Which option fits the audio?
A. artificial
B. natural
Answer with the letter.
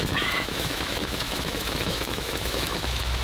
A